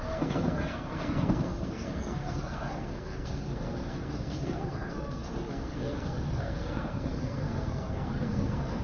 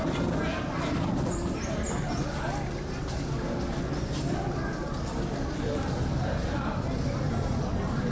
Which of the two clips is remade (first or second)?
first